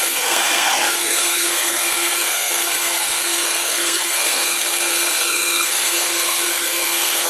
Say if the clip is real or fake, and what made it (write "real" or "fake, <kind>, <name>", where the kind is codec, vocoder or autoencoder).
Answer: fake, codec, SNAC